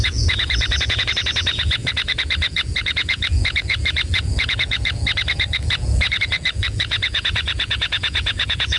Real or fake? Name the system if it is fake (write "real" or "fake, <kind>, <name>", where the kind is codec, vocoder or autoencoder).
fake, vocoder, Vocos